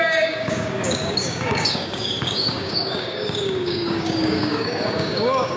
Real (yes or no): no